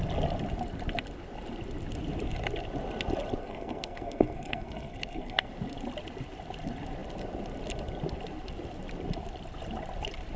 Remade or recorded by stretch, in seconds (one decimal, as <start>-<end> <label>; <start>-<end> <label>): 0.0-3.4 recorded; 3.4-5.5 remade; 5.5-10.4 recorded